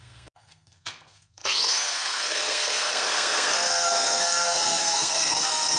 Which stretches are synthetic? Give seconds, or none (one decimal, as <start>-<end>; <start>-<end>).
0.0-5.8